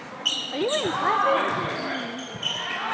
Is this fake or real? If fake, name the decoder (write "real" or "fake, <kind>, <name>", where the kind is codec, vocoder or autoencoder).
real